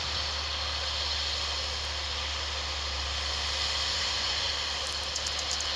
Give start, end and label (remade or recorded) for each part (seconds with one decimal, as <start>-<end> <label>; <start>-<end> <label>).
0.0-3.9 recorded; 3.9-4.5 remade; 4.5-5.8 recorded